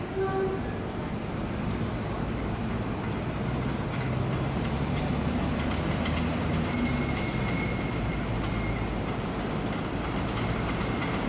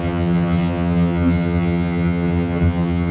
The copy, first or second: second